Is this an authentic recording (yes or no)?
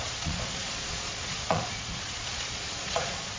no